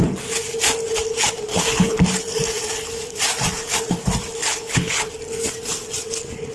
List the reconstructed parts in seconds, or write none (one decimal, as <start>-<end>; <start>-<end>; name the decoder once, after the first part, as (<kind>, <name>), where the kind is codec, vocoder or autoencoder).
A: 1.5-2.0 (codec, HILCodec); 4.4-5.1